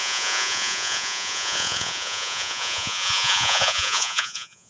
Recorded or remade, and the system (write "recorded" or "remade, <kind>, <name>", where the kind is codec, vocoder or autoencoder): remade, vocoder, Vocos